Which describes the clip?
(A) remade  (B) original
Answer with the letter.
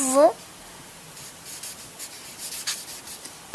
B